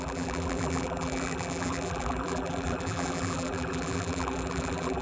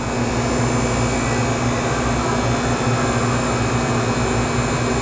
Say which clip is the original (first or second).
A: second